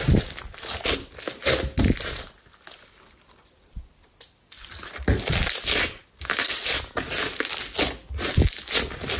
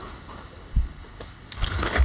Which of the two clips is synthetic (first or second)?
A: second